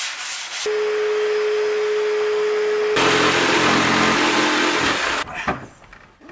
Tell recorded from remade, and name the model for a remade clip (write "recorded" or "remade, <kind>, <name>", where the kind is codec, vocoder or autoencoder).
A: recorded